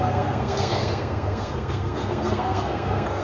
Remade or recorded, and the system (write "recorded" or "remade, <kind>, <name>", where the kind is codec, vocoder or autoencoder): remade, codec, SNAC